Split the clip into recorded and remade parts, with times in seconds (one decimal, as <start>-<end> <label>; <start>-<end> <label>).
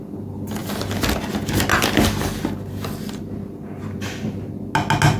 0.0-5.2 recorded